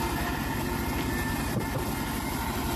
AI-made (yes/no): no